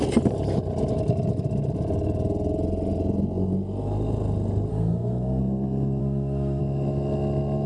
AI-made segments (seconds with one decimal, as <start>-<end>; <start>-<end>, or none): 4.7-5.4; 6.0-6.6